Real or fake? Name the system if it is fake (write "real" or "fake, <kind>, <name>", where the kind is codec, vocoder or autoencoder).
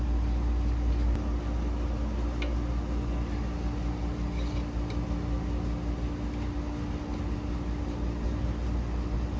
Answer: real